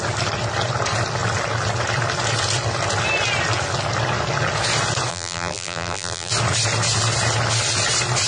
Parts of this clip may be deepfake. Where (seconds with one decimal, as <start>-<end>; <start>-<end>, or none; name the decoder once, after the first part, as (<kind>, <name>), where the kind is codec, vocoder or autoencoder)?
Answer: 5.1-6.3 (vocoder, BigVGAN v2)